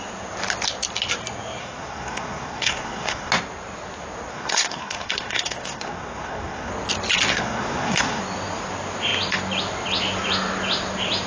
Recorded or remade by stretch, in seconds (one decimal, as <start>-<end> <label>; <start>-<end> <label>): 0.0-1.6 recorded; 1.6-3.3 remade; 3.3-4.3 recorded; 4.3-6.7 remade; 6.7-7.3 recorded; 7.3-8.2 remade; 8.2-11.3 recorded